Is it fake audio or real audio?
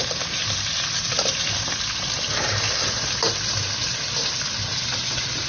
real